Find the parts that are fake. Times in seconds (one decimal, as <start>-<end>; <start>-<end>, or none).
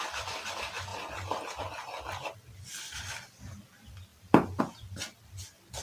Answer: none